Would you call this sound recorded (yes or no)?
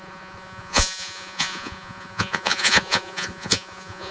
no